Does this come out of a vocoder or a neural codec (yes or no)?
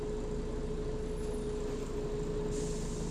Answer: no